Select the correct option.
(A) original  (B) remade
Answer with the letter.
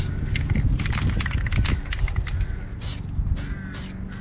A